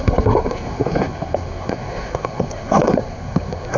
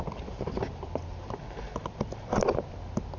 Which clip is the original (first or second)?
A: second